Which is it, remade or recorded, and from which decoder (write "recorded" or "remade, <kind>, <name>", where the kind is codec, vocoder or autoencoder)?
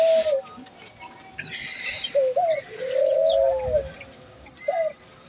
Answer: recorded